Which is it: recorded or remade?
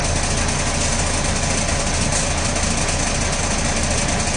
recorded